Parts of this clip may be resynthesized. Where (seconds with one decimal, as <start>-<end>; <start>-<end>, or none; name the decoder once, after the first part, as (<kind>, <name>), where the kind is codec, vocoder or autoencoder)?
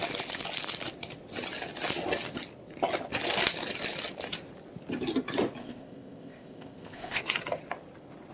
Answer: 5.6-7.2 (codec, ZipCodec)